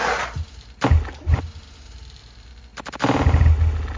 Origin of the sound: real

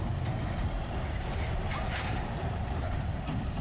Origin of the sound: fake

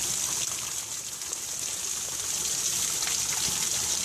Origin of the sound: real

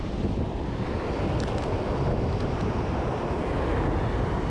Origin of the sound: real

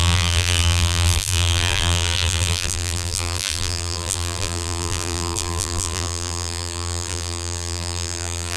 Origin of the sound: fake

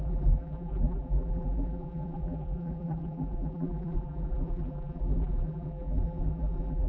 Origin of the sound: fake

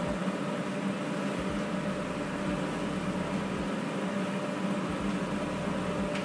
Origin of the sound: real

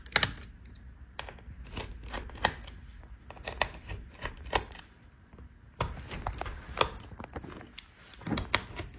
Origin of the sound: real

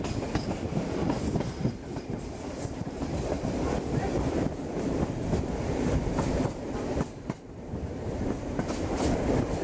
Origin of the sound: fake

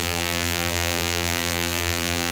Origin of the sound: fake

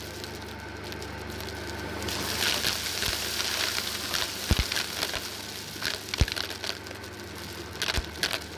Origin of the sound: real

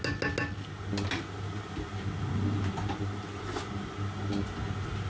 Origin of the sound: real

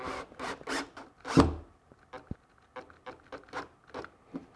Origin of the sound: real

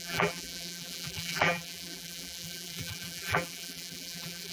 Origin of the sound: fake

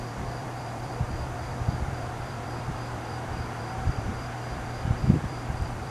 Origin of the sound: fake